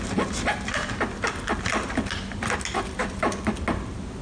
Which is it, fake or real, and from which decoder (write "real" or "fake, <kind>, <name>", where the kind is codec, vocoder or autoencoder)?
real